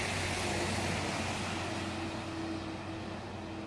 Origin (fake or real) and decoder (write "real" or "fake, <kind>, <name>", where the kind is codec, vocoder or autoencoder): real